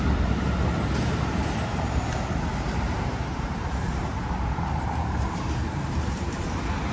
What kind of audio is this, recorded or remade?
remade